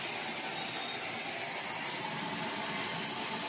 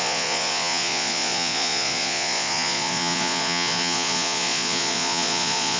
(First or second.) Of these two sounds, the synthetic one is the second